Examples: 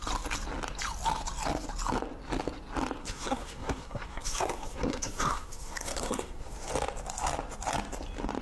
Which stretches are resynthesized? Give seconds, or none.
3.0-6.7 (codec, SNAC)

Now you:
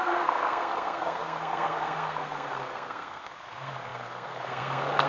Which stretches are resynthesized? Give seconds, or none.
0.0-5.1 (codec, SNAC)

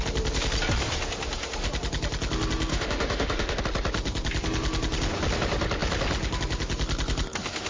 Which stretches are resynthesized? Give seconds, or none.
2.7-3.6 (autoencoder, DAC-VAE)

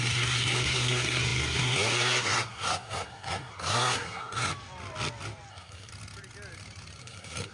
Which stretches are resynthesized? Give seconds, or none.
0.0-4.5 (codec, SNAC); 5.5-5.9; 7.0-7.5

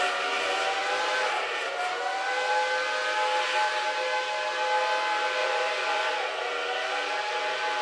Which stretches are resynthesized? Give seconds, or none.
5.4-6.1 (vocoder, Vocos)

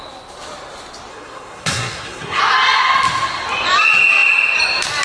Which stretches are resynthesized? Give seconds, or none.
1.1-2.4 (codec, SNAC)